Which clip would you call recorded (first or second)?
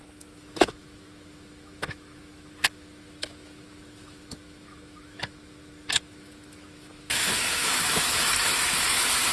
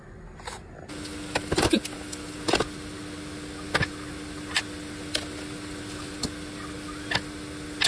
second